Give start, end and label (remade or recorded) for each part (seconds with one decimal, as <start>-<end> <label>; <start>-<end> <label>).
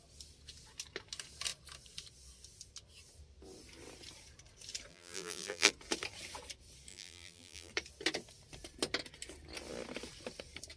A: 0.0-4.9 recorded; 4.9-5.7 remade; 5.7-6.9 recorded; 6.9-7.7 remade; 7.7-10.8 recorded